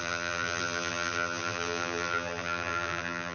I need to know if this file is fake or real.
fake